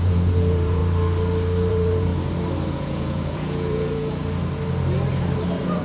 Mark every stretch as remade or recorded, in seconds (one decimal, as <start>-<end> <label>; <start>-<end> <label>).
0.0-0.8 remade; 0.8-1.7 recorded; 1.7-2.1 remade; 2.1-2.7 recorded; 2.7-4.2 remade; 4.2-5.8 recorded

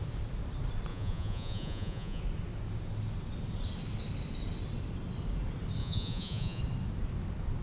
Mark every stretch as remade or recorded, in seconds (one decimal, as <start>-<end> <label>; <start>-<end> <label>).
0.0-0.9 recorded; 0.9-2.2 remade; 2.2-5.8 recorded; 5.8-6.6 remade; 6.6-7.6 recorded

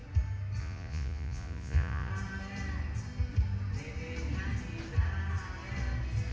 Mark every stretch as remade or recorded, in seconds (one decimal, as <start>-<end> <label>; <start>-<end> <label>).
0.0-0.6 recorded; 0.6-2.1 remade; 2.1-6.3 recorded

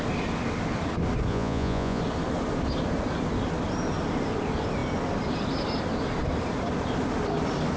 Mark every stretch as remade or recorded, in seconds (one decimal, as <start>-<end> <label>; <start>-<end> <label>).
0.0-1.3 recorded; 1.3-2.0 remade; 2.0-7.8 recorded

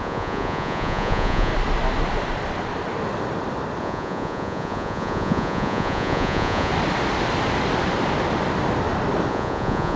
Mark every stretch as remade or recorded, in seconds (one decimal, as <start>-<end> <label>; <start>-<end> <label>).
0.0-1.5 remade; 1.5-3.8 recorded; 3.8-6.7 remade; 6.7-9.3 recorded; 9.3-10.0 remade